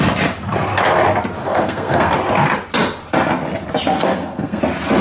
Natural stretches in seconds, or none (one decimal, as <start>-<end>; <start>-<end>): 0.0-1.4; 2.1-4.0; 4.6-5.0

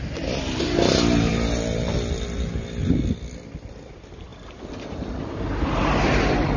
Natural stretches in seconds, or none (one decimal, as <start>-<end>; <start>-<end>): 0.0-6.6

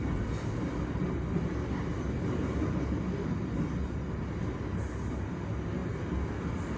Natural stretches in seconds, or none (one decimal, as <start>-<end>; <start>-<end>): 0.0-6.8

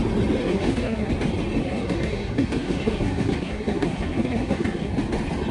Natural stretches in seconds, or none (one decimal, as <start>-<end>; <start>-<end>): 0.0-0.4; 1.1-1.6; 4.9-5.5

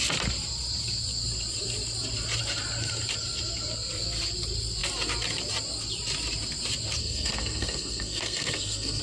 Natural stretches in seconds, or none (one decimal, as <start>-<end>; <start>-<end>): 0.0-7.0

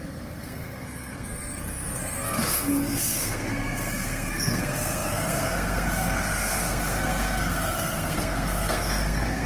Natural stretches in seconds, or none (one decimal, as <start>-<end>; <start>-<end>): none

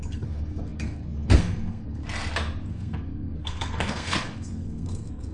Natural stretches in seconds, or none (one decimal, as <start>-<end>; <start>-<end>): 2.0-2.7